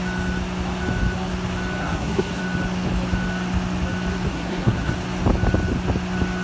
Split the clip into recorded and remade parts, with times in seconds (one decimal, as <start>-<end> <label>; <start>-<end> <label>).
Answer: 0.0-1.8 recorded; 1.8-2.4 remade; 2.4-4.3 recorded; 4.3-4.9 remade; 4.9-6.4 recorded